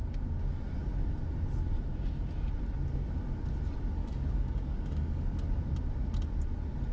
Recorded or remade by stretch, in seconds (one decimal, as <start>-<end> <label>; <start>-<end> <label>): 0.0-4.0 recorded; 4.0-5.6 remade; 5.6-6.9 recorded